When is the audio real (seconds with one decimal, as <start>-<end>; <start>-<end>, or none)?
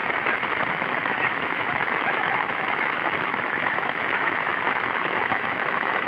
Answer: 0.0-0.7